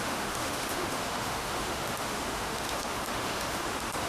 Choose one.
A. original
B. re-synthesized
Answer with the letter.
B